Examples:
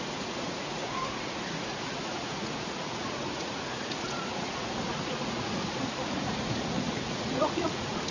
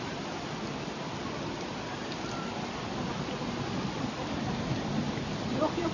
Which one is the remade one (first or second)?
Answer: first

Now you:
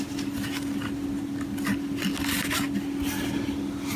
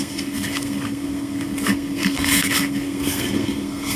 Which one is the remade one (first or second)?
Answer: second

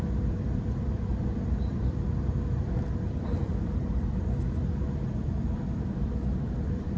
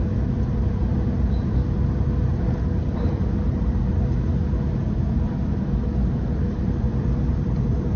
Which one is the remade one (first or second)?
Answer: first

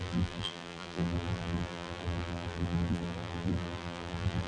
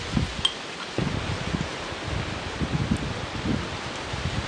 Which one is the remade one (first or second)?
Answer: first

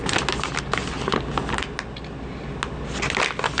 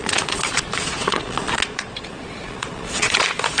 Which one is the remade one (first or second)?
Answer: second